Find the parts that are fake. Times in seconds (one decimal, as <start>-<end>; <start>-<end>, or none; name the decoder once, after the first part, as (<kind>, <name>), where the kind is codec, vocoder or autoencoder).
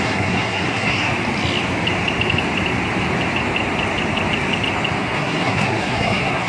0.0-1.1 (codec, SNAC); 5.0-6.5